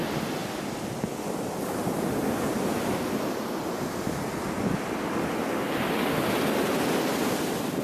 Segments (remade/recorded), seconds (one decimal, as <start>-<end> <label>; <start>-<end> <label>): 0.0-7.8 recorded